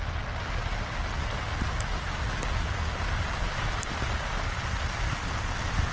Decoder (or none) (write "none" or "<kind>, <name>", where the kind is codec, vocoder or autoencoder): none